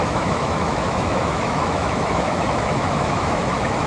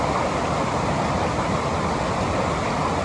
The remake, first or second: first